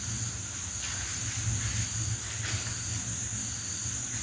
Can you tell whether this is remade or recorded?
recorded